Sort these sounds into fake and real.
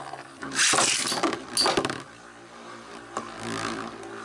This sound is real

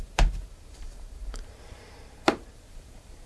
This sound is fake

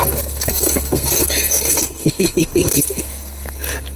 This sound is fake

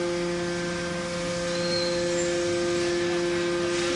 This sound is real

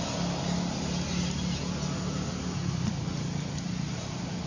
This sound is real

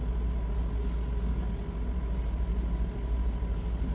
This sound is real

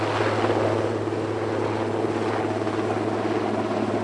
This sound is real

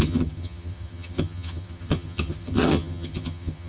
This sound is fake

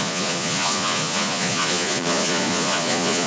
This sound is fake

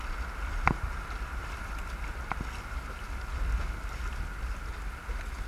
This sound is real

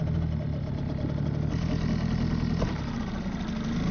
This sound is real